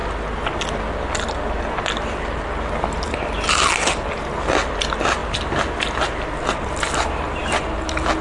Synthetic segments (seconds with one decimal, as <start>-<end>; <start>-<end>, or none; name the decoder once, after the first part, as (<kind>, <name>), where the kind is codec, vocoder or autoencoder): none